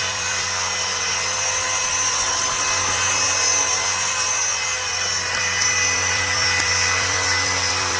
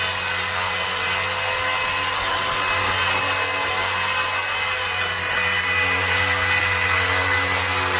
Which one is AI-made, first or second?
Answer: first